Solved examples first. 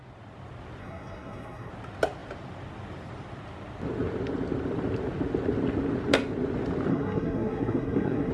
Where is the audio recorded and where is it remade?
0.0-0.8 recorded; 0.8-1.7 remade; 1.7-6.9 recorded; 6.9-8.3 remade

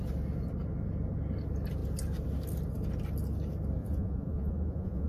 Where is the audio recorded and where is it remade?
0.0-3.8 recorded; 3.8-5.1 remade